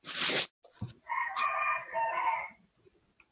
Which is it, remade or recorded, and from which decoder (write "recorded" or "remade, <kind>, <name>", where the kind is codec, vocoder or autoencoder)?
recorded